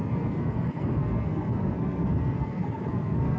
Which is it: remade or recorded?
remade